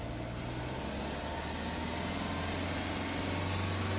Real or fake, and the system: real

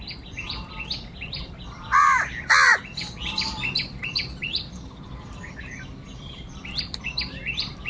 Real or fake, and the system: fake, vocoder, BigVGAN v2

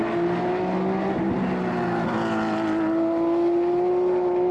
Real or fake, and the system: real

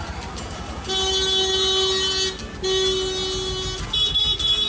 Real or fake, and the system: real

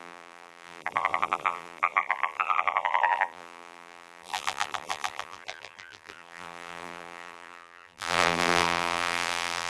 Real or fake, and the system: fake, vocoder, BigVGAN v2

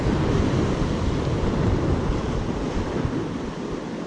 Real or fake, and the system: real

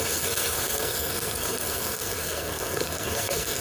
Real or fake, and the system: fake, codec, SNAC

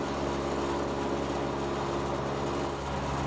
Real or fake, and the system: real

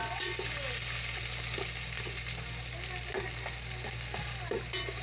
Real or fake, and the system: real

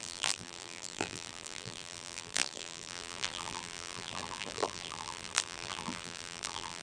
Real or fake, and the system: fake, vocoder, BigVGAN v2